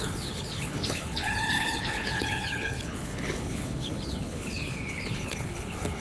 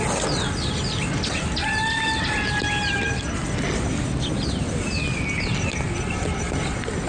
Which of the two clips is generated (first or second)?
first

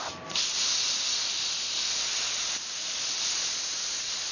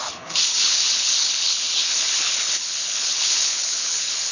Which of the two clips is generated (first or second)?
second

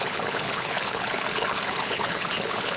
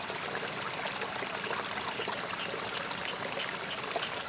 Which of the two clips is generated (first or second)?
first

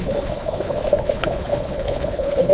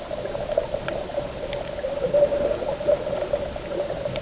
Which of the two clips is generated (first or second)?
first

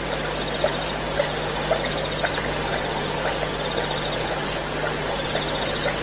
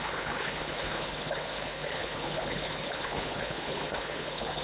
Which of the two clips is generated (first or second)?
second